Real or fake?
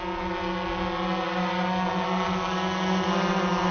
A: real